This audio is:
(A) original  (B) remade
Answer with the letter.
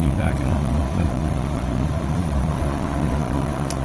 B